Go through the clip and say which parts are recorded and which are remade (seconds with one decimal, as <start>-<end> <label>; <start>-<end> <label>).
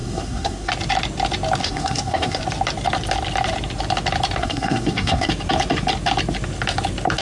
0.0-0.7 remade; 0.7-1.6 recorded; 1.6-2.4 remade; 2.4-4.4 recorded; 4.4-5.3 remade; 5.3-7.2 recorded